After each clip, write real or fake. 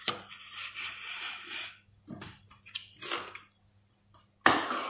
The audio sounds real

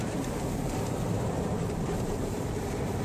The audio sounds fake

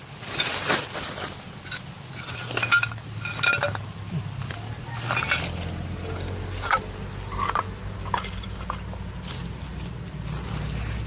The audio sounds real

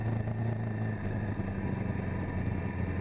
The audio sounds real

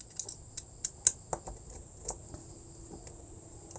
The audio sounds real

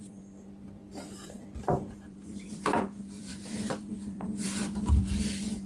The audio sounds fake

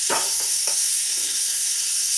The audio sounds fake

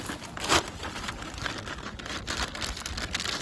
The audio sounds real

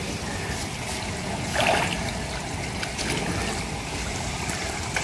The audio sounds fake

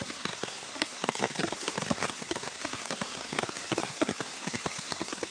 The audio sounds fake